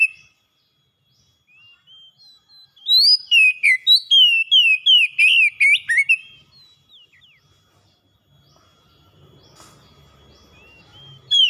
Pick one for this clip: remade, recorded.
recorded